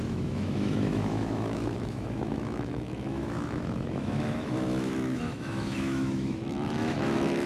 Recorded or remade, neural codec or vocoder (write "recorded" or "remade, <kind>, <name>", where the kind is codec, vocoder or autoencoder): remade, autoencoder, DAC-VAE